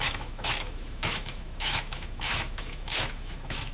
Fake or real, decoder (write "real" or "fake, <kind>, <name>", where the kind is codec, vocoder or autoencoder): fake, autoencoder, DAC-VAE